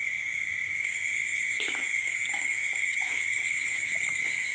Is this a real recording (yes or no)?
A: no